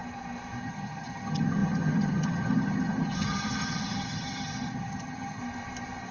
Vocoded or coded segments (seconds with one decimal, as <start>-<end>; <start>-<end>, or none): 0.6-5.4